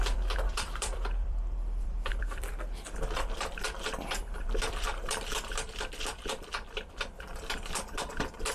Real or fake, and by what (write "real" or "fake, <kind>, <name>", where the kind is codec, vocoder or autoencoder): fake, vocoder, BigVGAN v2